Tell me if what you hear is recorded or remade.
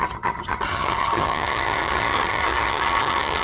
remade